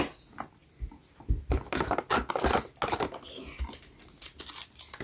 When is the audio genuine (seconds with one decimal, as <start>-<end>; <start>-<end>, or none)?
0.0-5.0